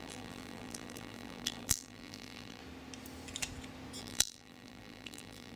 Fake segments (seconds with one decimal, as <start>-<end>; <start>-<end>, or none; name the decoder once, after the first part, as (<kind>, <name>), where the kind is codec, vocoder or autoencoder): 0.0-2.6 (vocoder, BigVGAN v2); 4.0-5.6